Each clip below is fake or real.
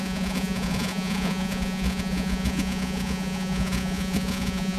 fake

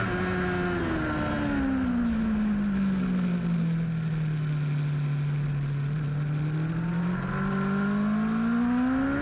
real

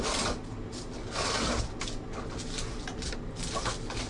real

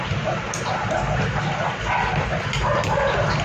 real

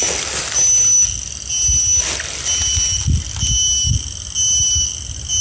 real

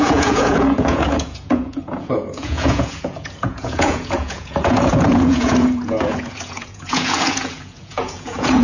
fake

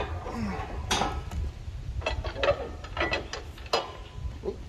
real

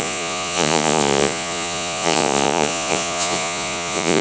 fake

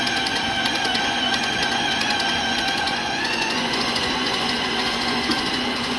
fake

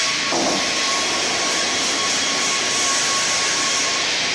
real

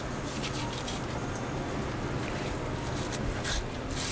real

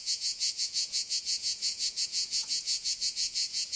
fake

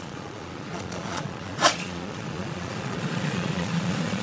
fake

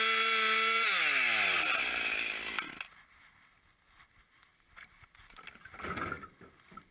real